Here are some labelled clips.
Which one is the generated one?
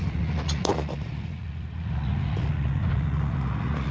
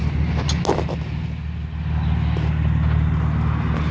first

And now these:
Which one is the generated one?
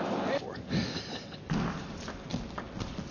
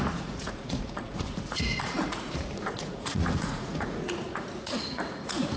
second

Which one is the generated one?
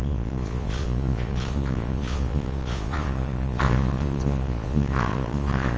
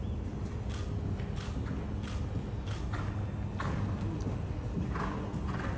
first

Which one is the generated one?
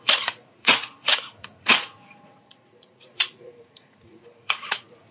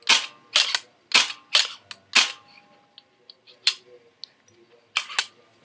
first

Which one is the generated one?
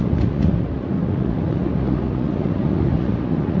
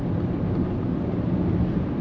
first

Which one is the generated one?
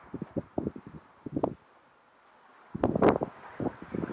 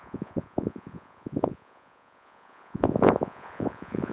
second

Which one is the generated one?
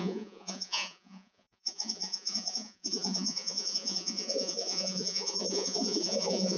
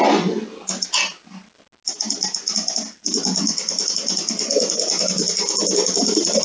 first